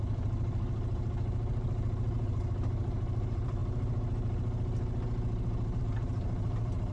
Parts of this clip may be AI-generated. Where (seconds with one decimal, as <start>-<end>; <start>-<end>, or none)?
0.0-3.6; 5.8-6.9